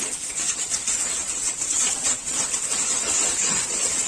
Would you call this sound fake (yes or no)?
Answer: yes